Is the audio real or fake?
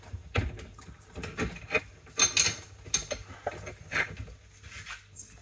real